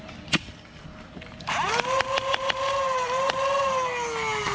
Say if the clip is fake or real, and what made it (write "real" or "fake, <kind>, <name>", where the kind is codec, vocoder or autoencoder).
real